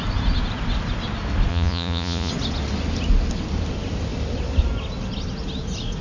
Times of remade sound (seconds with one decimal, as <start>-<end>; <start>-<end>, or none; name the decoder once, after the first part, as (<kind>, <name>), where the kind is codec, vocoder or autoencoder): 1.5-2.3 (vocoder, Vocos)